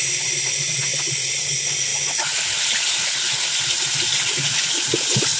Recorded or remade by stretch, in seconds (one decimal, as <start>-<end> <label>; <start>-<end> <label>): 0.0-0.9 recorded; 0.9-1.5 remade; 1.5-5.4 recorded